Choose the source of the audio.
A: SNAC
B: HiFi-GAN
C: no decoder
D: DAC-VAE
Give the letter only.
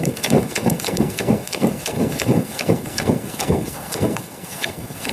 A